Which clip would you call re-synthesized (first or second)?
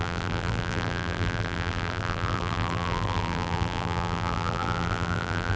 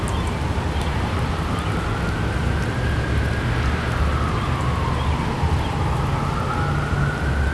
first